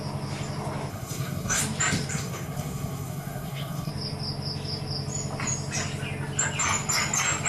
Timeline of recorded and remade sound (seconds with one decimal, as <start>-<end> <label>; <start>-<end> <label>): 0.0-0.9 recorded; 0.9-1.6 remade; 1.6-2.1 recorded; 2.1-3.9 remade; 3.9-7.5 recorded